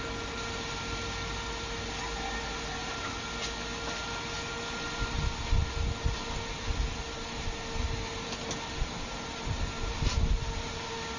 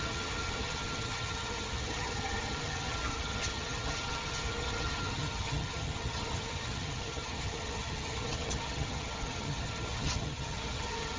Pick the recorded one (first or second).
first